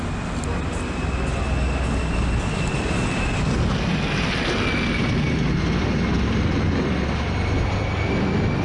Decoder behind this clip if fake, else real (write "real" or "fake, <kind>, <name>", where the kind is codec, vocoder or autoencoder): real